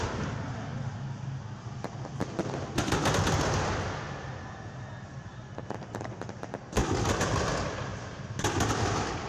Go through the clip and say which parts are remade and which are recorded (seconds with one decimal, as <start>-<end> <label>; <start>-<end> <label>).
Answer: 0.0-9.3 recorded